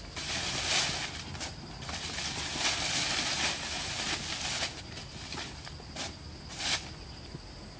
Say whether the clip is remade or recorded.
recorded